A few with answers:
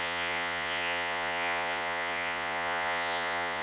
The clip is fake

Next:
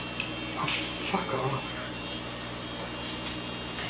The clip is real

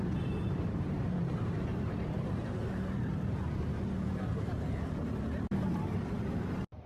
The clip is fake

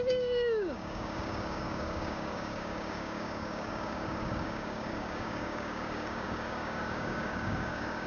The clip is fake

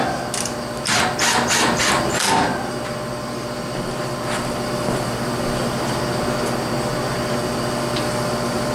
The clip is real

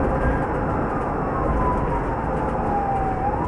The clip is real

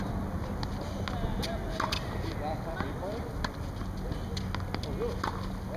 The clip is real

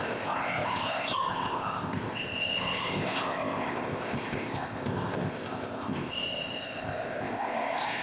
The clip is fake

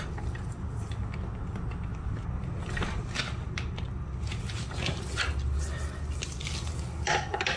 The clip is real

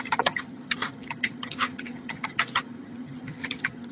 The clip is fake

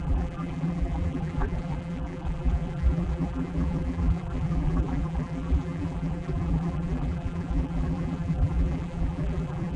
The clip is fake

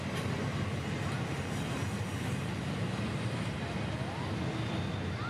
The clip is real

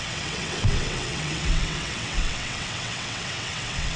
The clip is fake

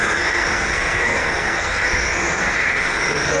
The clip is fake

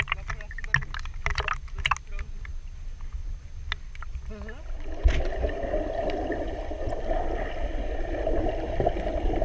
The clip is real